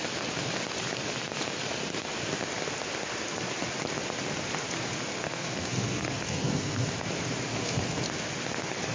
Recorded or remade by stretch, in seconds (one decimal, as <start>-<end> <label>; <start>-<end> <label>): 0.0-5.1 recorded; 5.1-6.9 remade; 6.9-7.5 recorded; 7.5-8.0 remade; 8.0-8.9 recorded